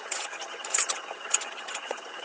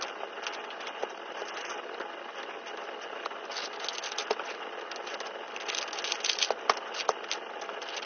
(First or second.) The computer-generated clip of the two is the first